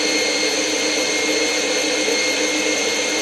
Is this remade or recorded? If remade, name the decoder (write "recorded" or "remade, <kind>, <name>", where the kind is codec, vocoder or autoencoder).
recorded